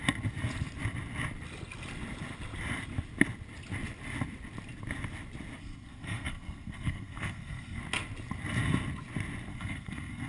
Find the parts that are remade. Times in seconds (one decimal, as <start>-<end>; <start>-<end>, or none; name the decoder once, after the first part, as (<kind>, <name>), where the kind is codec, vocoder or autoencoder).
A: 5.6-7.8 (codec, SNAC); 9.5-10.3